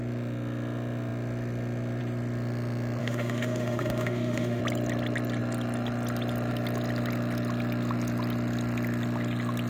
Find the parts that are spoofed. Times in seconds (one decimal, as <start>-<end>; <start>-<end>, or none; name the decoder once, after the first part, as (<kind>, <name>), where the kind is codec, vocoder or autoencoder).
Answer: 3.0-4.6 (autoencoder, DAC-VAE)